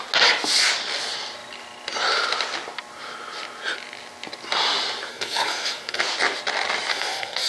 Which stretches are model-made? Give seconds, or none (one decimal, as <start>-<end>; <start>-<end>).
5.1-6.0; 6.9-7.5